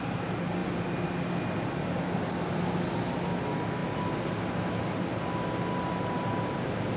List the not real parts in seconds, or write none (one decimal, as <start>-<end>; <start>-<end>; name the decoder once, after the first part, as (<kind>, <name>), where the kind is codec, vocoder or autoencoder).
none